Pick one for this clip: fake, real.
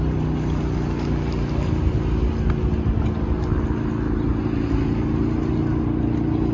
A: real